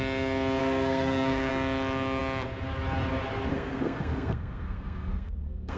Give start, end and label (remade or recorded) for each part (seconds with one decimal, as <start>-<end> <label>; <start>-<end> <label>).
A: 0.0-0.6 recorded; 0.6-1.5 remade; 1.5-3.5 recorded; 3.5-5.8 remade